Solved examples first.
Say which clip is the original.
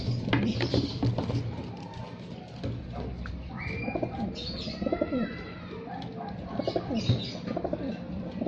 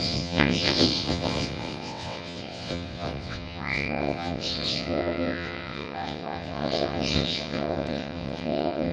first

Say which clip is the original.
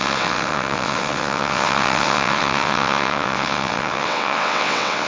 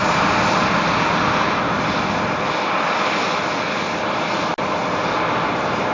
second